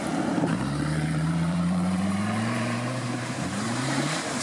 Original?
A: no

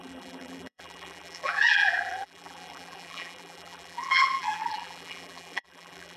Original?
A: no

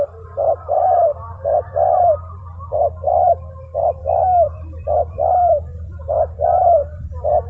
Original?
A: no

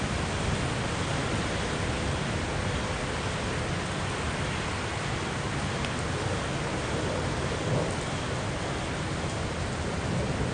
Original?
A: yes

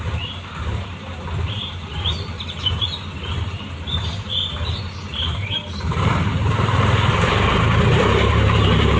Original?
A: no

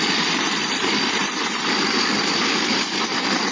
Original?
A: no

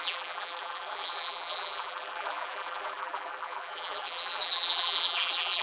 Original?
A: no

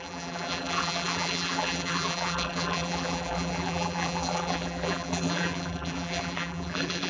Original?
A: no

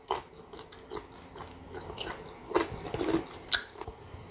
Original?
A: yes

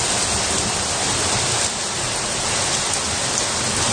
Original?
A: yes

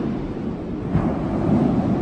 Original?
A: yes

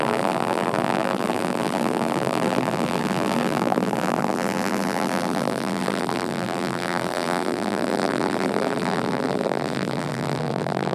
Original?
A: no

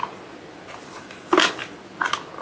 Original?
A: yes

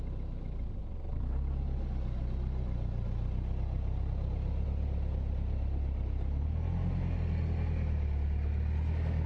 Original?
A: yes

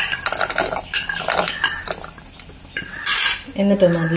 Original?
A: yes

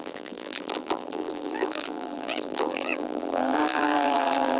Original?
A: no